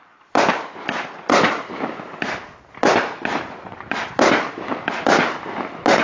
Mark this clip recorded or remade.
recorded